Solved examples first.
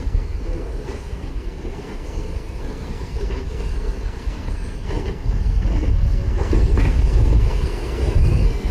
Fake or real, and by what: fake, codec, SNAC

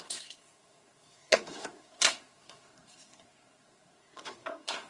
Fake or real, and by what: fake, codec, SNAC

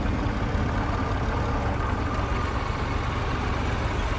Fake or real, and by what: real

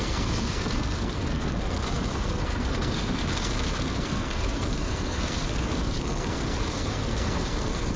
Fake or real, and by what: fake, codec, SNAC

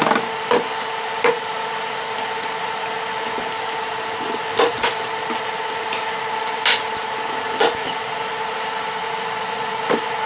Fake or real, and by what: real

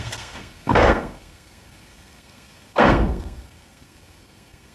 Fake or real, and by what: fake, codec, SNAC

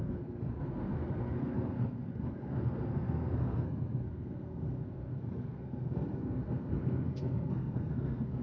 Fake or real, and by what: fake, codec, SNAC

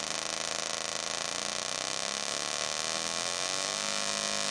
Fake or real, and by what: real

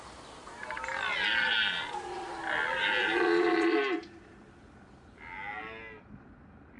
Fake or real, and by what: real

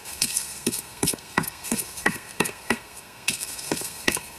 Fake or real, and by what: fake, codec, SNAC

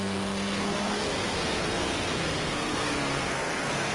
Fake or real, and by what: fake, codec, SNAC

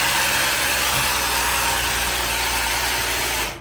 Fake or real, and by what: real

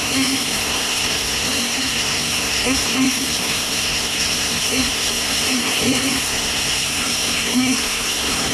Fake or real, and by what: fake, codec, SNAC